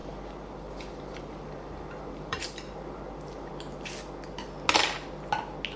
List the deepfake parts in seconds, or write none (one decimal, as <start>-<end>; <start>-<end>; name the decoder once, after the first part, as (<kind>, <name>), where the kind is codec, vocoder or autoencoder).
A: 0.0-3.5 (vocoder, BigVGAN v2)